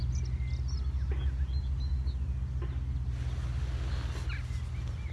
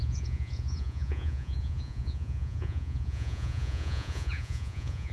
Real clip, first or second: first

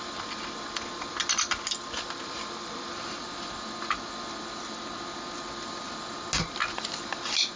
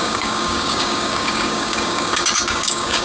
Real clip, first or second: first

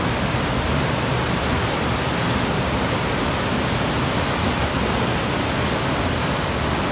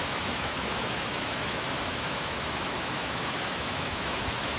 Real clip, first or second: first